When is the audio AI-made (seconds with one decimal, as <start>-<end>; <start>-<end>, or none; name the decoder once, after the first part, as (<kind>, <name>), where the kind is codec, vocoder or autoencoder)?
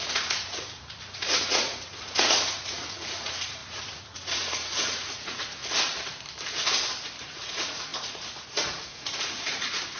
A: 0.0-5.6 (vocoder, Vocos); 7.2-10.0